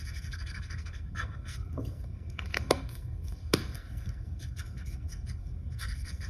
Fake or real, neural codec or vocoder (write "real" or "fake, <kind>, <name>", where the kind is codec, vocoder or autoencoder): fake, codec, SNAC